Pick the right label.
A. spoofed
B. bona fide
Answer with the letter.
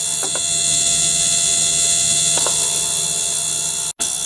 B